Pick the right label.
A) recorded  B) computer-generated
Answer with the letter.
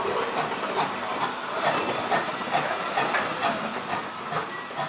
A